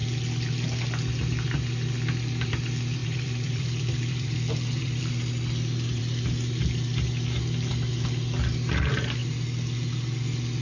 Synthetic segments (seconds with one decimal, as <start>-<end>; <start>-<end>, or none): 3.0-5.0